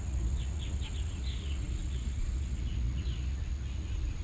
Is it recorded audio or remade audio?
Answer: remade